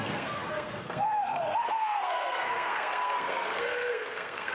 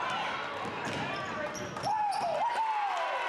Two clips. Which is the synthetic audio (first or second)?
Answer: first